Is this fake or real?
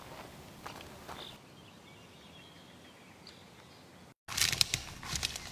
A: real